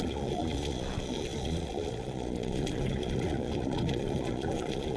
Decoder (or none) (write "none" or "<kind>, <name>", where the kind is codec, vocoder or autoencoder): vocoder, Vocos